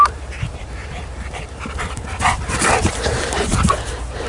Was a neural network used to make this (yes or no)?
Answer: yes